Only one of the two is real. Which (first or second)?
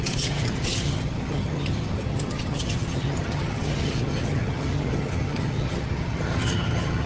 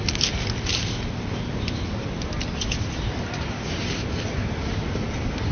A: second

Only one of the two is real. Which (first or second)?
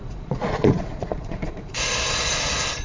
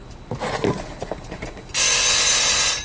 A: second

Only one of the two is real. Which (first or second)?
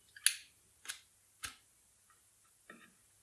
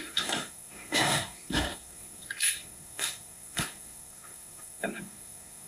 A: first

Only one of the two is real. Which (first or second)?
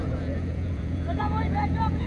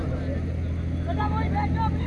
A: second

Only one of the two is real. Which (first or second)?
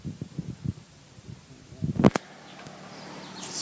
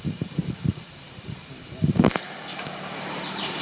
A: first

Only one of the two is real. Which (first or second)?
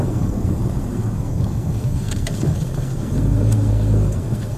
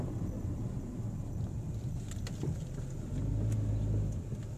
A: second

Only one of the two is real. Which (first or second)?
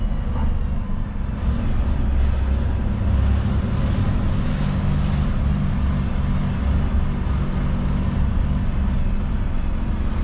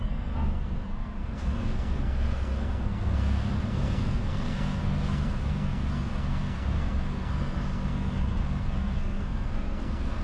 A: first